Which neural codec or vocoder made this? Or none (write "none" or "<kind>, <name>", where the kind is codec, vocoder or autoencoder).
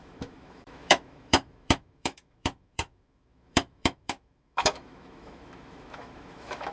autoencoder, DAC-VAE